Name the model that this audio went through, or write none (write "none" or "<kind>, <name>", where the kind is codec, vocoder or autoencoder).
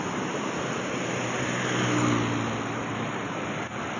none